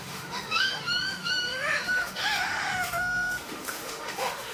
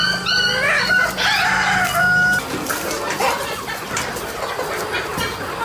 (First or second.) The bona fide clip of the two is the second